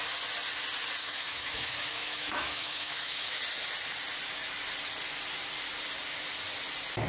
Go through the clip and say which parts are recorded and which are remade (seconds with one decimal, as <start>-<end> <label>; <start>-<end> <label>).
0.0-1.0 recorded; 1.0-3.4 remade; 3.4-7.1 recorded